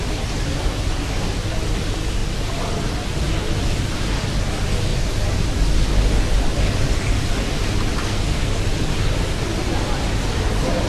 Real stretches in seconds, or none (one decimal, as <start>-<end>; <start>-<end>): 0.0-8.0; 8.5-10.9